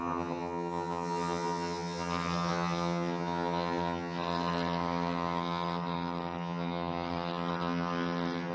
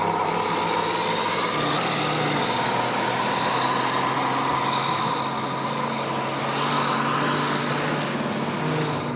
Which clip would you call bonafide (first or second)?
second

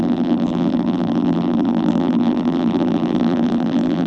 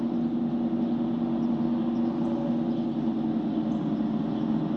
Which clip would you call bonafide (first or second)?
second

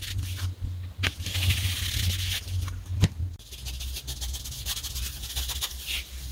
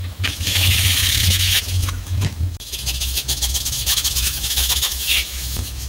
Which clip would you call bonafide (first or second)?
first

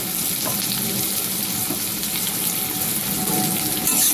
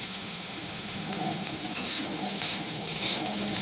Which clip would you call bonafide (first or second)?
first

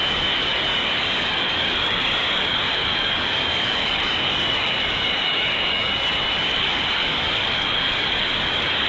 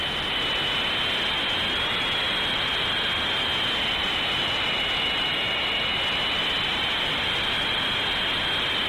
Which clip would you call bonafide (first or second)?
second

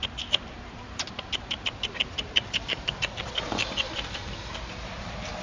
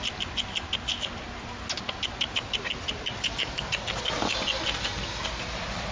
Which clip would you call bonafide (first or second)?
second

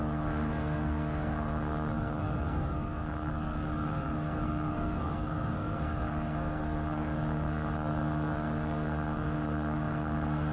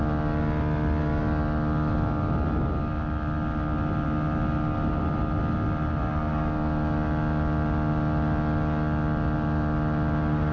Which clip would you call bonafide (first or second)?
second